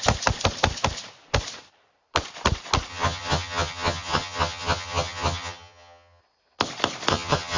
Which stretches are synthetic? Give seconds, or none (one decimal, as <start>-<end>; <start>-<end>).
2.9-6.2; 7.1-7.6